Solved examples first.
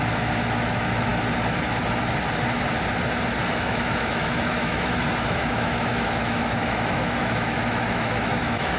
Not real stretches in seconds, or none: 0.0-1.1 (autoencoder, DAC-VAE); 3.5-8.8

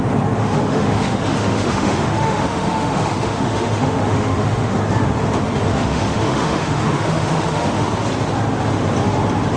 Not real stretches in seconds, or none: 0.4-4.8 (autoencoder, DAC-VAE); 5.7-7.9

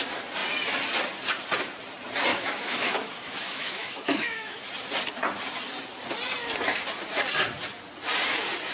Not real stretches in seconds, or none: 2.3-4.6 (autoencoder, DAC-VAE)

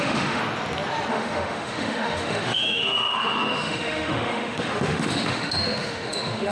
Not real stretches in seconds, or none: 0.0-0.4 (autoencoder, DAC-VAE); 1.1-6.5

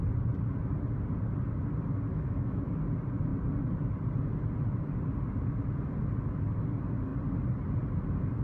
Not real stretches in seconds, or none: 2.1-2.6 (autoencoder, DAC-VAE)